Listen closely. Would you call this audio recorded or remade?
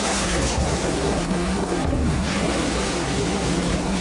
remade